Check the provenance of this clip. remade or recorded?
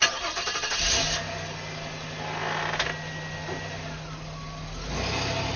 recorded